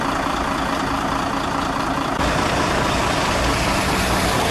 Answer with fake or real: real